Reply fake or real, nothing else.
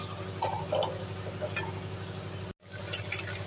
real